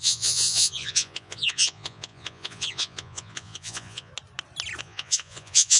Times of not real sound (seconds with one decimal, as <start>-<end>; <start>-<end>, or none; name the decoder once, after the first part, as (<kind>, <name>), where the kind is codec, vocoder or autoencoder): 0.0-4.1 (vocoder, Vocos); 4.8-5.8